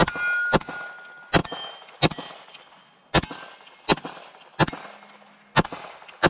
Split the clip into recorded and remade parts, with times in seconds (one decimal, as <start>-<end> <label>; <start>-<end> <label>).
0.0-6.3 recorded